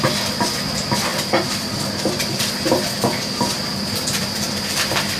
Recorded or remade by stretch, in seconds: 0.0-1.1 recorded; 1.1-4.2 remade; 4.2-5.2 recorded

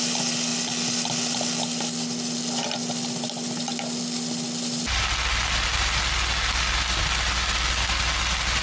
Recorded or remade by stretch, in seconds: 0.0-8.6 recorded

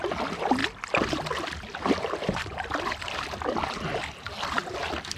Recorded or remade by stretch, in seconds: 0.0-5.2 recorded

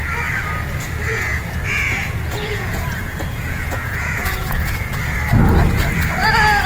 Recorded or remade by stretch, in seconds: 0.0-1.1 recorded; 1.1-5.0 remade; 5.0-6.7 recorded